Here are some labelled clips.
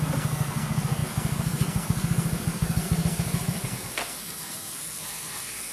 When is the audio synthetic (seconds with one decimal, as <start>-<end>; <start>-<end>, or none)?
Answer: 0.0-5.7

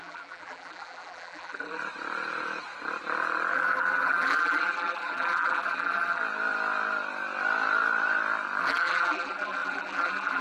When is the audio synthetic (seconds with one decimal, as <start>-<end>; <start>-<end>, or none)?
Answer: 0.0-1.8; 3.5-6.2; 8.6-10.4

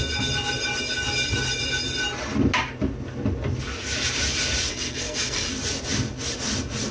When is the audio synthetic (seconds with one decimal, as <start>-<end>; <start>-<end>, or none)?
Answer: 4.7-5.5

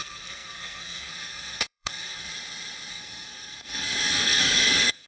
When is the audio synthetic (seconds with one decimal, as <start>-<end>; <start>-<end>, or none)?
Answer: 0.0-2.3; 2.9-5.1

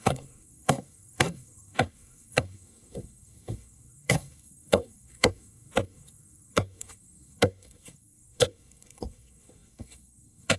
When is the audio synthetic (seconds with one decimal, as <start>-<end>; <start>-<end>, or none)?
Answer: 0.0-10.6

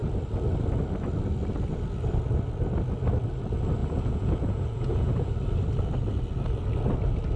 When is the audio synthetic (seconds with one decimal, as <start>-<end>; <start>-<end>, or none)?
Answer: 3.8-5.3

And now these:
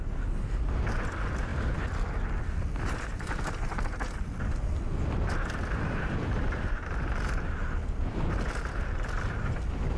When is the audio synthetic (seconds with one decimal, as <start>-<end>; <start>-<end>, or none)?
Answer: 1.5-6.7